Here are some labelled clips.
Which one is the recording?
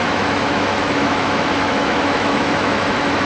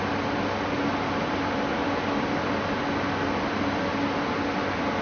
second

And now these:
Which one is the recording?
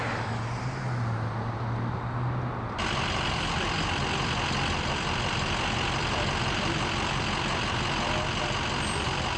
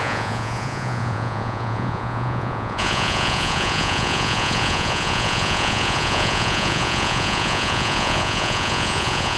first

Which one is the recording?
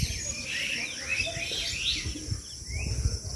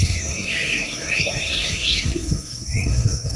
first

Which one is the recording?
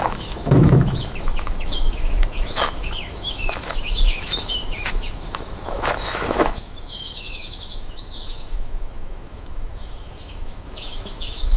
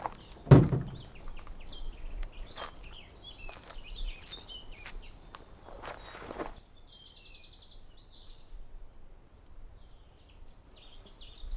second